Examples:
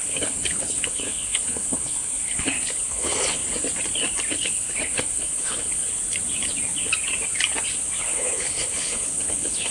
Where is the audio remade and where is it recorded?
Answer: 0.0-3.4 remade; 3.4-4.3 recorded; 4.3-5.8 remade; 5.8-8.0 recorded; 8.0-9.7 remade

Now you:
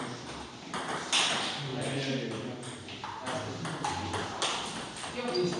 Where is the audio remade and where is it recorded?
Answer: 0.0-5.6 recorded

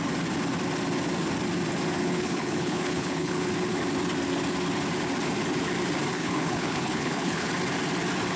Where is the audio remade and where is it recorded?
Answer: 0.0-2.0 recorded; 2.0-3.5 remade; 3.5-6.1 recorded; 6.1-7.5 remade; 7.5-8.4 recorded

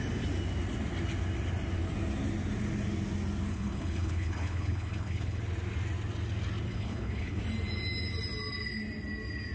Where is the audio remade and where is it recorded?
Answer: 0.0-3.5 recorded; 3.5-5.4 remade; 5.4-6.7 recorded; 6.7-7.4 remade; 7.4-9.5 recorded

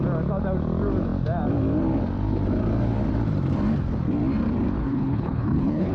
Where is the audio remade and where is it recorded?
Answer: 0.0-4.8 recorded; 4.8-5.9 remade

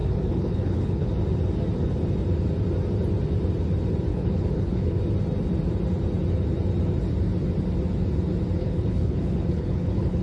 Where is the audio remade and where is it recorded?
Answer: 0.0-1.1 remade; 1.1-4.1 recorded; 4.1-5.0 remade; 5.0-8.6 recorded; 8.6-10.2 remade